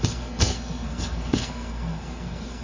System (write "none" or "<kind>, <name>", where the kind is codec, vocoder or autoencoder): codec, SNAC